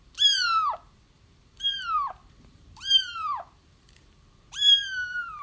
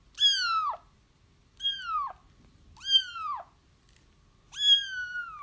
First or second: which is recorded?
second